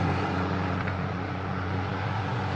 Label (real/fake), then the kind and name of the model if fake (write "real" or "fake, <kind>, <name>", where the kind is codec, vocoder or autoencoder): fake, vocoder, Vocos